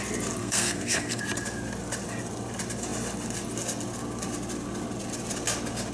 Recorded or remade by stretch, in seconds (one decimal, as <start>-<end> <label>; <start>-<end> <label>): 0.0-0.4 recorded; 0.4-1.2 remade; 1.2-5.9 recorded